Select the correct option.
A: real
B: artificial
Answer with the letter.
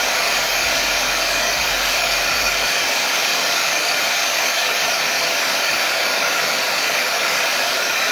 B